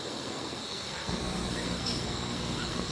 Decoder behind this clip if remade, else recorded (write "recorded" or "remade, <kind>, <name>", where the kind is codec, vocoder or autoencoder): remade, codec, SNAC